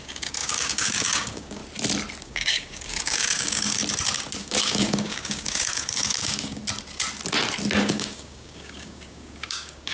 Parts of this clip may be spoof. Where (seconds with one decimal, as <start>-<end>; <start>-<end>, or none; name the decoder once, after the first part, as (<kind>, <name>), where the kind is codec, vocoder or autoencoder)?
0.0-1.6 (codec, DAC); 2.2-3.8; 4.4-6.6; 7.8-9.9